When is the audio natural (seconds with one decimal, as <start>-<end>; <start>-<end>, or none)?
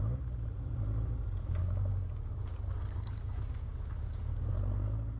0.0-1.6; 4.5-5.2